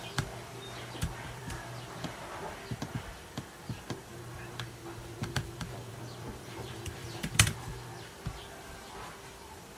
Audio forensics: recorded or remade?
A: remade